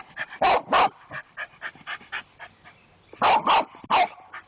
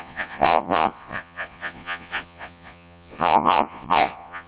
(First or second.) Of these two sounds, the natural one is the first